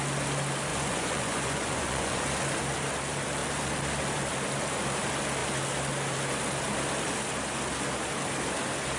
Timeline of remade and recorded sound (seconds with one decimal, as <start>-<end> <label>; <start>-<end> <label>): 0.0-0.7 recorded; 0.7-2.2 remade; 2.2-9.0 recorded